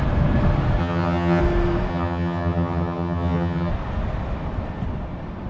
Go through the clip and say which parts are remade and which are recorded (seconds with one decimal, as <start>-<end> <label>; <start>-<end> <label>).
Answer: 0.0-0.8 recorded; 0.8-1.4 remade; 1.4-1.9 recorded; 1.9-3.7 remade; 3.7-5.5 recorded